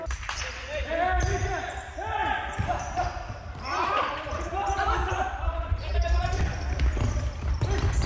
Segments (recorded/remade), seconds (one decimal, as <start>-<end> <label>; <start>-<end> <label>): 0.0-8.1 remade